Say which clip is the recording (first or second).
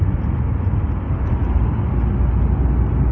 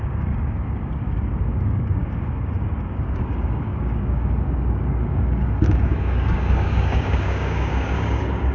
first